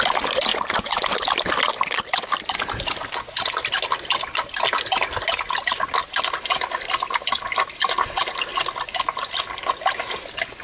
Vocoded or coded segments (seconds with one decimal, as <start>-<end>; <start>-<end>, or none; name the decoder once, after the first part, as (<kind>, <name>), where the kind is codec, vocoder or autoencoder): none